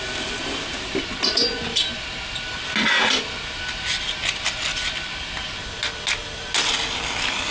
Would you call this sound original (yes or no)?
yes